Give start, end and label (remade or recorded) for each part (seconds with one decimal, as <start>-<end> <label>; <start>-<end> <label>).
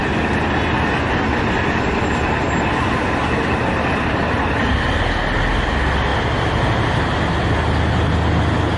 0.0-8.8 recorded